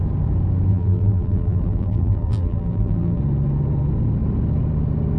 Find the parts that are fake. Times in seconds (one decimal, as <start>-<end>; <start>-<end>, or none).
0.7-3.2